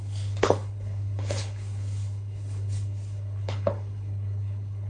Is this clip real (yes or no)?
no